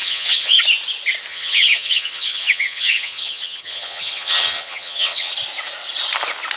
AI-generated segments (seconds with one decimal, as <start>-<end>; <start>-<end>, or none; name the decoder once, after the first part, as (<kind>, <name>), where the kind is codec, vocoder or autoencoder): 0.0-0.6 (vocoder, HiFi-GAN); 1.3-5.3